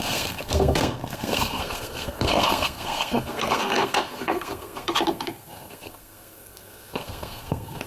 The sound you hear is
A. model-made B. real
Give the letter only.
A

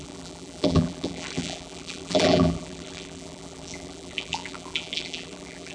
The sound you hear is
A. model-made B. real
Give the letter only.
A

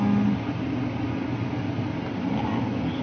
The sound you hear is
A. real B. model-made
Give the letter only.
A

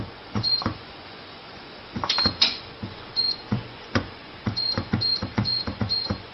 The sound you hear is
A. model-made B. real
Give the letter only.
A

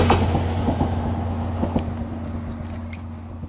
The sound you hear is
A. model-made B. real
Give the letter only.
B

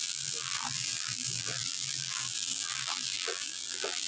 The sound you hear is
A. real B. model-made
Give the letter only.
B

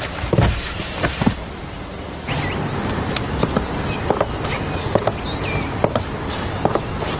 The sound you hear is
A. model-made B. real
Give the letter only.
B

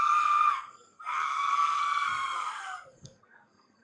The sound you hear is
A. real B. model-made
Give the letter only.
B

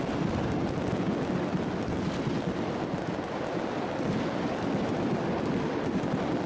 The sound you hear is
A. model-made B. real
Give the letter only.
B